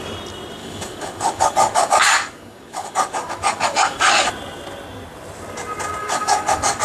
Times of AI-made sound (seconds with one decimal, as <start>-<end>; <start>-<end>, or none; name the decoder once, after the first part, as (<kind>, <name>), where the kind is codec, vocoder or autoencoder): 0.6-4.3 (codec, DAC); 6.0-6.8